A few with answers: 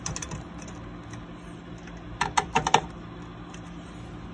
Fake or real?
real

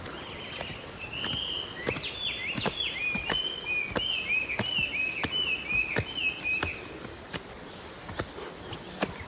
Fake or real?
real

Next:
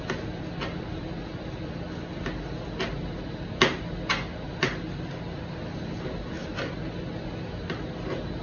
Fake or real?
real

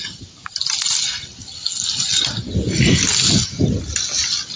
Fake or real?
real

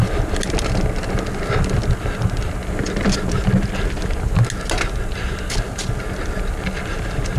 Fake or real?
real